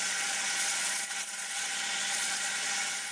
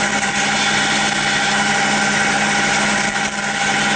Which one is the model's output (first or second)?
first